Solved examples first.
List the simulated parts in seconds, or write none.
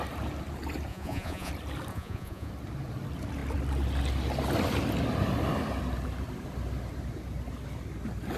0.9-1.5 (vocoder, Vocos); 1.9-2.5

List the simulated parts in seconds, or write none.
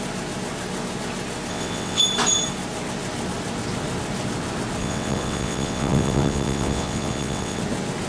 1.5-2.0 (vocoder, WaveNeXt); 4.8-7.6